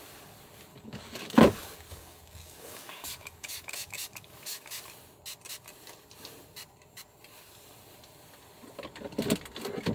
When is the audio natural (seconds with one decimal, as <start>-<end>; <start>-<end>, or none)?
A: 0.0-0.7; 4.7-9.9